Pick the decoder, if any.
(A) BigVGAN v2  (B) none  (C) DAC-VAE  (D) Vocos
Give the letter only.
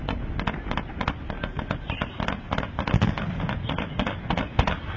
B